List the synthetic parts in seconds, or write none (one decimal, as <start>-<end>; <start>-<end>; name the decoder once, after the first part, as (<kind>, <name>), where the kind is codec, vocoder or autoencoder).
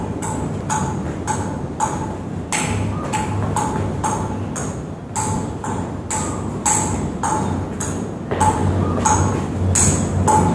none